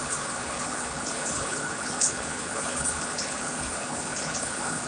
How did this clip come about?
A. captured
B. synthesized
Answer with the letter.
B